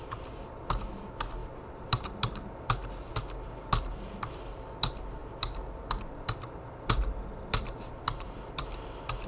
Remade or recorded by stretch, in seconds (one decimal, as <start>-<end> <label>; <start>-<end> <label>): 0.0-9.3 recorded

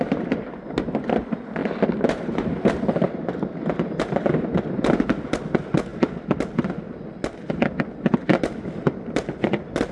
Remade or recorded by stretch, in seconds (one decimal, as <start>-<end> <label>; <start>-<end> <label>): 0.0-1.6 recorded; 1.6-3.6 remade; 3.6-9.9 recorded